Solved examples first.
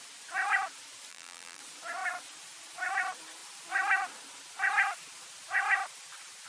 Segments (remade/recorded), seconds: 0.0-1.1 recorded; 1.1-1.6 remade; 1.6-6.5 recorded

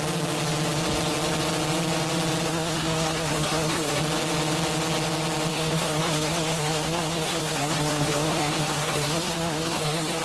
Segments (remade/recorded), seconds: 0.0-2.5 recorded; 2.5-4.0 remade; 4.0-5.5 recorded; 5.5-10.2 remade

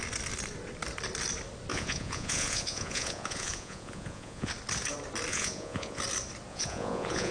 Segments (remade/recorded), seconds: 0.0-1.7 recorded; 1.7-4.5 remade; 4.5-5.3 recorded; 5.3-6.0 remade; 6.0-6.5 recorded; 6.5-7.3 remade

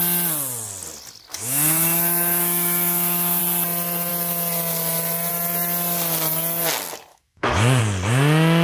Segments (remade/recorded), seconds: 0.0-1.3 recorded; 1.3-3.4 remade; 3.4-7.1 recorded; 7.1-7.8 remade; 7.8-8.6 recorded